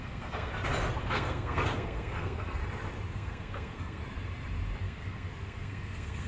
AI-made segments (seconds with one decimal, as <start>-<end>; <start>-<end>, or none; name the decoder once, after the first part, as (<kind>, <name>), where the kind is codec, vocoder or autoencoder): 0.0-0.5 (codec, SNAC); 1.0-2.6; 3.1-4.0; 4.8-6.3